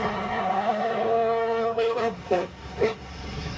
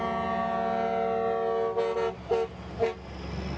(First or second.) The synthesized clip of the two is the first